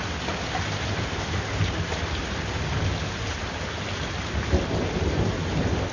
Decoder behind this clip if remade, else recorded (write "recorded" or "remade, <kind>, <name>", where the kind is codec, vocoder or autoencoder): recorded